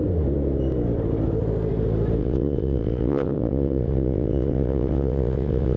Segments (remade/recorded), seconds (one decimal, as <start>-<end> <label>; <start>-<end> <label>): 0.0-2.2 recorded; 2.2-5.8 remade